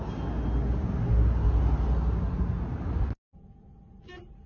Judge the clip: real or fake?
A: real